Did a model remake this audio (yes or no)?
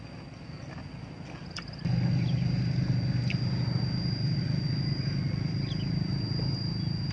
no